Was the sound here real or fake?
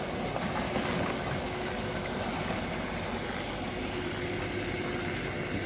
real